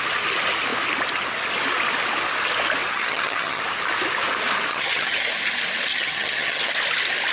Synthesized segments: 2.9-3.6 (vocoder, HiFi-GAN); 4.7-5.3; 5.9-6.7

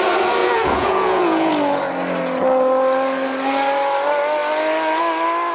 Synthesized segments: 0.4-1.5 (vocoder, Vocos)

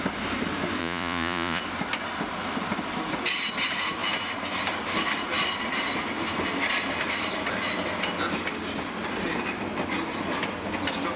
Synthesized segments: 0.8-1.6 (vocoder, Vocos)

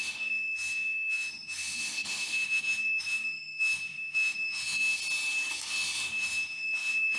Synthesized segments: 0.0-5.0 (autoencoder, DAC-VAE); 5.5-7.2

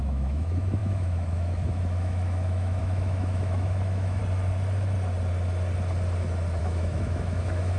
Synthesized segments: 0.0-4.2 (autoencoder, DAC-VAE); 6.6-7.8

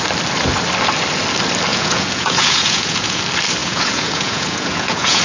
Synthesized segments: 1.7-3.2 (vocoder, Vocos); 3.6-5.2

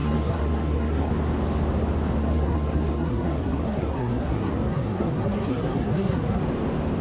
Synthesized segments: 0.0-1.1 (codec, SNAC); 2.2-6.4